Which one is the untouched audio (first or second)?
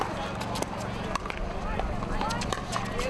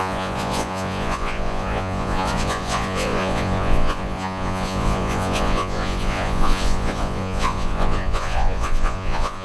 first